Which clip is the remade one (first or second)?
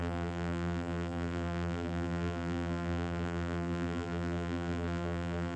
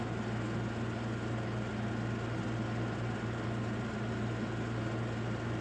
first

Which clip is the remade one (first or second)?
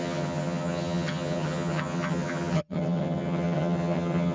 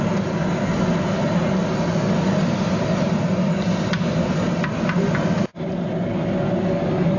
first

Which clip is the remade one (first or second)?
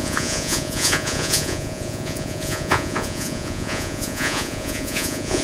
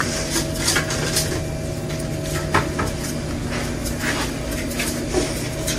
first